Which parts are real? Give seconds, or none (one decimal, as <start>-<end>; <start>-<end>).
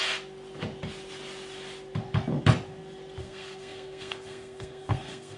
0.0-3.2